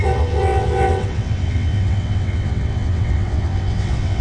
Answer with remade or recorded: remade